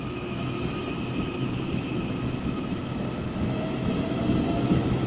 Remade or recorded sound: remade